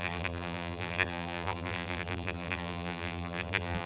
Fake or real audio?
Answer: fake